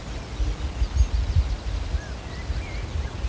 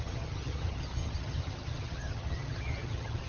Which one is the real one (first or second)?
first